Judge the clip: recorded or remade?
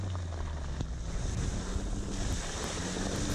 recorded